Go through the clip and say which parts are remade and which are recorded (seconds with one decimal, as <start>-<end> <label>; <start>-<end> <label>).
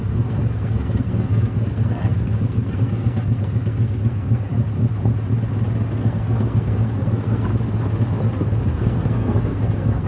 0.0-4.5 remade; 4.5-6.0 recorded; 6.0-7.5 remade; 7.5-8.7 recorded; 8.7-10.1 remade